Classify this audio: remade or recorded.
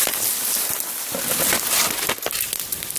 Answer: recorded